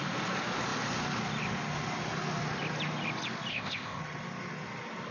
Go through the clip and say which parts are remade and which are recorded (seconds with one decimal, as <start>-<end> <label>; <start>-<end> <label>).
0.0-3.5 recorded; 3.5-4.0 remade; 4.0-5.1 recorded